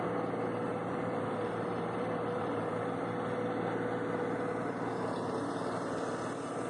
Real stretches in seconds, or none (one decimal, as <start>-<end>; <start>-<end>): 0.0-0.7; 3.0-6.7